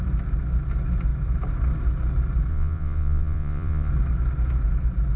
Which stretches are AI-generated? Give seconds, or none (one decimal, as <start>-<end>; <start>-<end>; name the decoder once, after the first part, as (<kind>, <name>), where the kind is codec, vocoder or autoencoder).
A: 2.5-3.9 (vocoder, Vocos)